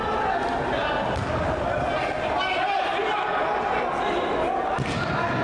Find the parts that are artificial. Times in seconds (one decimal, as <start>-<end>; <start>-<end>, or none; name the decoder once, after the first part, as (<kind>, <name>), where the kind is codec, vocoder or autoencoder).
none